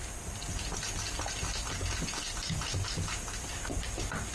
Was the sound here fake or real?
real